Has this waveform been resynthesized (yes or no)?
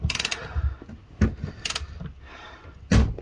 no